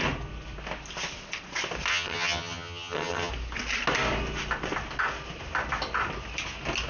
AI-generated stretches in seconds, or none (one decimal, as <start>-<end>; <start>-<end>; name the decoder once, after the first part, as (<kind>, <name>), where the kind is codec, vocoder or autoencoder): 1.9-3.3 (vocoder, HiFi-GAN)